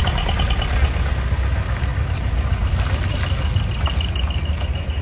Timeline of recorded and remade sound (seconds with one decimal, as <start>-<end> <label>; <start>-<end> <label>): 0.0-5.0 recorded